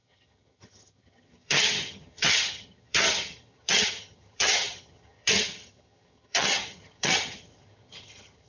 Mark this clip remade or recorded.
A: remade